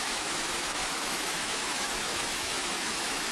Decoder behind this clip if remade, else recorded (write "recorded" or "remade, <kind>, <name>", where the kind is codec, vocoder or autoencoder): remade, autoencoder, DAC-VAE